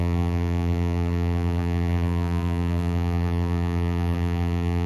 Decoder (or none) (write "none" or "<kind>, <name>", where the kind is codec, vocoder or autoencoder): vocoder, BigVGAN v2